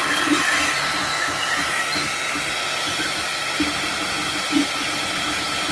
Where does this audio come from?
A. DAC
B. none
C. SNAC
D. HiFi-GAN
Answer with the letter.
B